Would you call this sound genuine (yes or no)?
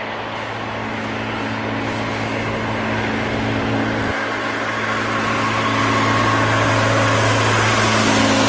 yes